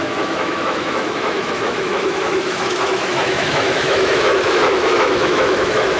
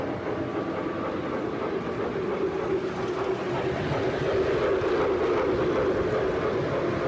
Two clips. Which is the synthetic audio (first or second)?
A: first